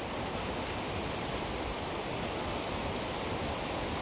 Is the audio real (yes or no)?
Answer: yes